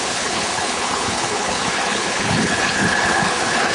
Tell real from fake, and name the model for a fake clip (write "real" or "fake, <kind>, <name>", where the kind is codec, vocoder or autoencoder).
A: fake, codec, HILCodec